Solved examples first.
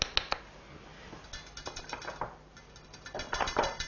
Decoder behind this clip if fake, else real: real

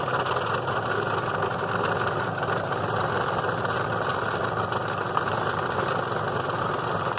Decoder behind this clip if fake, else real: real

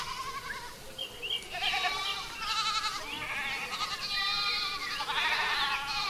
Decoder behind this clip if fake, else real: real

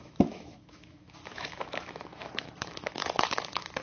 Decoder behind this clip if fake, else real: fake, autoencoder, DAC-VAE